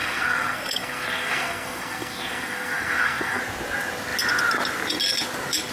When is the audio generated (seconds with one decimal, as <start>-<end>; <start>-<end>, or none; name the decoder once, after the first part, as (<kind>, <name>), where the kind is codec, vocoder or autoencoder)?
0.0-3.4 (codec, SNAC)